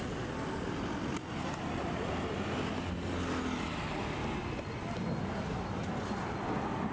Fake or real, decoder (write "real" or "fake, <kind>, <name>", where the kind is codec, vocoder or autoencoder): real